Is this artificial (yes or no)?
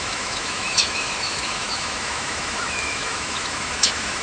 yes